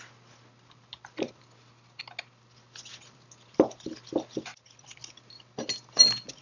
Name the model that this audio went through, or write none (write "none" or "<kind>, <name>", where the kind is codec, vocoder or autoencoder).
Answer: none